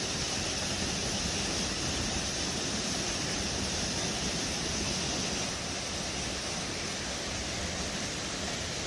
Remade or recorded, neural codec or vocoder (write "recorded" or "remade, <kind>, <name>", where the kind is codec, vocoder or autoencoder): recorded